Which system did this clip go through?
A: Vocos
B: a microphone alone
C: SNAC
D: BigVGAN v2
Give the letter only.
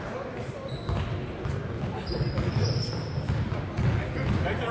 B